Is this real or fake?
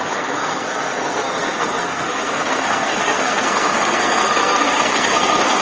fake